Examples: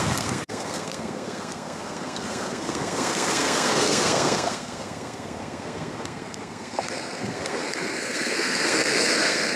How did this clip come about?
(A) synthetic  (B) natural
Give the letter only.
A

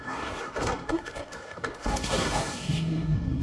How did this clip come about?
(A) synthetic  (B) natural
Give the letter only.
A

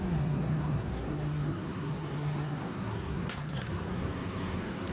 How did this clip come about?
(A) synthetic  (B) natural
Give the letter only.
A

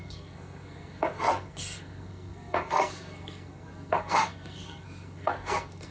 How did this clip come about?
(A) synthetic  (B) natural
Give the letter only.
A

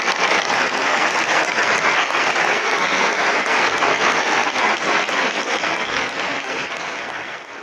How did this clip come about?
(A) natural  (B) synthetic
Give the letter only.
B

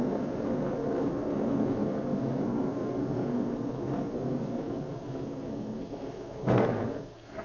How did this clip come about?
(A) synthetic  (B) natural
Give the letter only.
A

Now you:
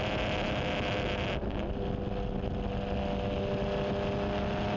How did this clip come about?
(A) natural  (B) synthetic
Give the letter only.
A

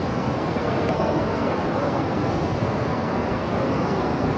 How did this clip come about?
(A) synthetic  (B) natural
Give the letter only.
A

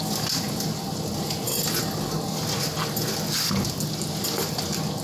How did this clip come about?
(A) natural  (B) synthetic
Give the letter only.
A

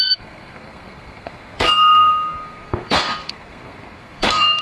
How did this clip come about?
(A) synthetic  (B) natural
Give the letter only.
A